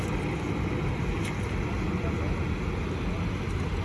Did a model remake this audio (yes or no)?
no